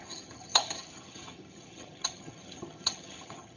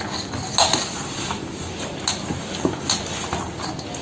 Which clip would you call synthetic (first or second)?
first